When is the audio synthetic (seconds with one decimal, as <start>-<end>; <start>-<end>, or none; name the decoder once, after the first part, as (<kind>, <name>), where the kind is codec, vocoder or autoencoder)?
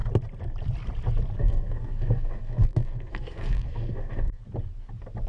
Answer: 1.4-4.4 (codec, SNAC)